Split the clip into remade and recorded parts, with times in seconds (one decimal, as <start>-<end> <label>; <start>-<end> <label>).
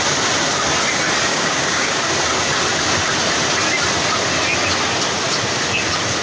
0.0-1.3 recorded; 1.3-2.1 remade; 2.1-6.2 recorded